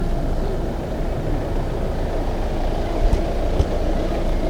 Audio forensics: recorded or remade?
recorded